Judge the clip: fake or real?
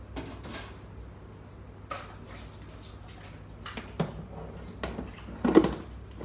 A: real